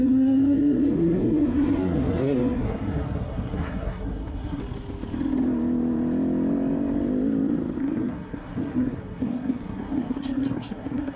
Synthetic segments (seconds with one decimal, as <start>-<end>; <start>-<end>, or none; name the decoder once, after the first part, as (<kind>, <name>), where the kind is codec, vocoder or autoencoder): 0.0-4.6 (codec, SNAC); 7.8-11.2